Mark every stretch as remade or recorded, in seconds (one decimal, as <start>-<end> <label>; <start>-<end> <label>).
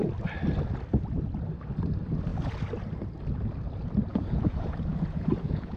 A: 0.0-4.1 recorded; 4.1-5.8 remade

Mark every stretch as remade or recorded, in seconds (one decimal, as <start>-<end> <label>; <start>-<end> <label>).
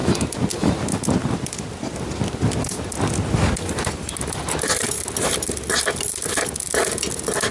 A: 0.0-7.5 recorded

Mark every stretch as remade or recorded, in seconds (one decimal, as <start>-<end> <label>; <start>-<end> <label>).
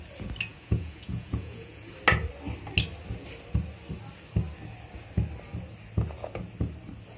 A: 0.0-0.5 recorded; 0.5-1.9 remade; 1.9-7.2 recorded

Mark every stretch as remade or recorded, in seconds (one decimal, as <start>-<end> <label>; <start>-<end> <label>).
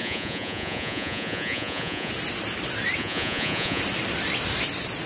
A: 0.0-2.1 remade; 2.1-3.0 recorded; 3.0-3.8 remade; 3.8-5.1 recorded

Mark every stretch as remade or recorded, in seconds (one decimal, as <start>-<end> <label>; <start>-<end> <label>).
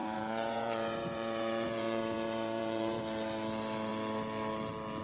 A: 0.0-3.0 remade; 3.0-5.0 recorded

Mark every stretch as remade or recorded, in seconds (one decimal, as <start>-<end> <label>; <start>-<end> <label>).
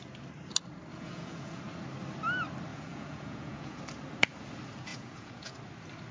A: 0.0-0.9 recorded; 0.9-1.6 remade; 1.6-2.7 recorded; 2.7-3.8 remade; 3.8-4.9 recorded; 4.9-5.5 remade; 5.5-6.1 recorded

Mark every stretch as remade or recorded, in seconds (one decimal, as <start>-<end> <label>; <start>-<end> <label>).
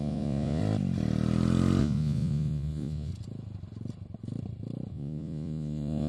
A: 0.0-0.6 remade; 0.6-1.8 recorded; 1.8-3.1 remade; 3.1-4.9 recorded; 4.9-6.1 remade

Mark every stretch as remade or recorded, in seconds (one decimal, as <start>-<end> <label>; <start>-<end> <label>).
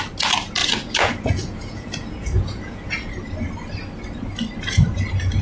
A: 0.0-0.6 recorded; 0.6-3.1 remade; 3.1-5.4 recorded